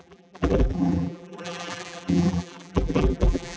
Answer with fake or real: fake